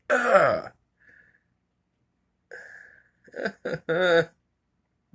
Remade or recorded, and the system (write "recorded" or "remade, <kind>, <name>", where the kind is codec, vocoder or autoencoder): recorded